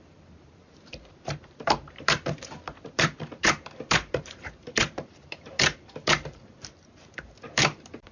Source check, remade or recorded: remade